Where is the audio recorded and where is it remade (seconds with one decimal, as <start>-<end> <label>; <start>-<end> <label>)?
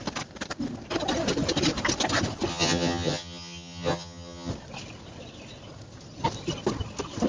0.0-2.5 recorded; 2.5-4.5 remade; 4.5-7.3 recorded